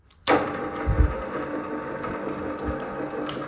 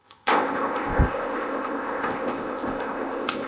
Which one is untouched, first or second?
first